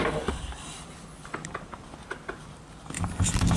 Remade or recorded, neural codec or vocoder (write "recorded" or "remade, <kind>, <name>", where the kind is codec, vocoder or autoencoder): recorded